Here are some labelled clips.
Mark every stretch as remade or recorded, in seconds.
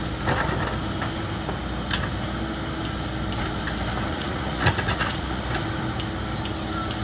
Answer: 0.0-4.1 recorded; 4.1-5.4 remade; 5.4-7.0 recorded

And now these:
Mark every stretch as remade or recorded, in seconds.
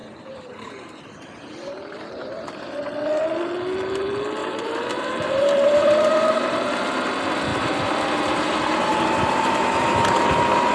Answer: 0.0-2.6 remade; 2.6-4.4 recorded; 4.4-6.6 remade; 6.6-7.5 recorded; 7.5-8.4 remade; 8.4-8.9 recorded; 8.9-10.2 remade; 10.2-10.7 recorded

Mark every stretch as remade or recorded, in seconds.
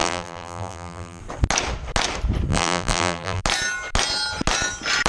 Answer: 0.0-1.2 remade; 1.2-2.5 recorded; 2.5-3.4 remade; 3.4-5.1 recorded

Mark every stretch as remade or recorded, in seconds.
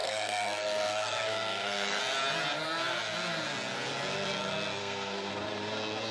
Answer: 0.0-2.0 remade; 2.0-4.8 recorded; 4.8-5.3 remade; 5.3-6.1 recorded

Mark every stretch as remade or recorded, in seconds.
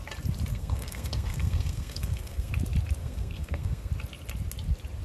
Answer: 0.0-0.5 recorded; 0.5-2.5 remade; 2.5-3.0 recorded; 3.0-3.9 remade; 3.9-5.0 recorded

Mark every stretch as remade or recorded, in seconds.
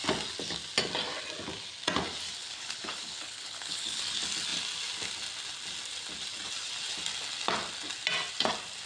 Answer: 0.0-2.4 recorded; 2.4-4.0 remade; 4.0-8.9 recorded